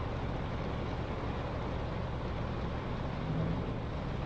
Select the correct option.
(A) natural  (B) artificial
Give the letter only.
B